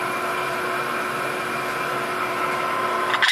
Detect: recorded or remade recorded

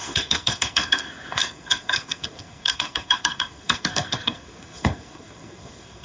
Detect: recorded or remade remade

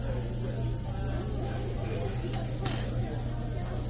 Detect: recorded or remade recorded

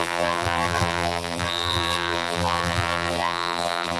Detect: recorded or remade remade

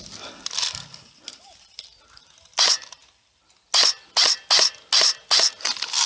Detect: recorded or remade recorded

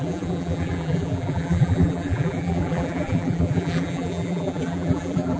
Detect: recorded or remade remade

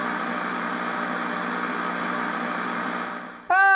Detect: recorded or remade recorded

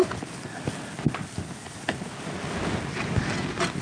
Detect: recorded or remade recorded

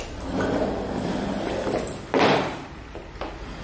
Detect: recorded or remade recorded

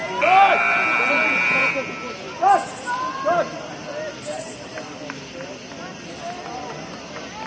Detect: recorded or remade recorded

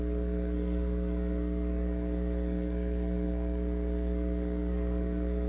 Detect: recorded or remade remade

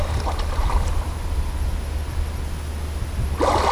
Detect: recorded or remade recorded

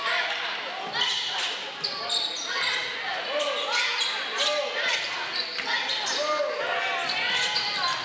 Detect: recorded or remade recorded